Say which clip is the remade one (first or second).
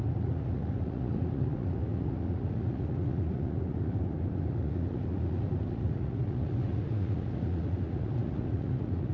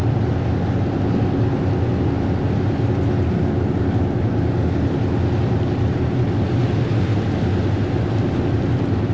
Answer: first